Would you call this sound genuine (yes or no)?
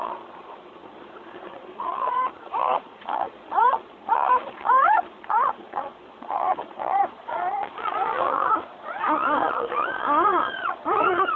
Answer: no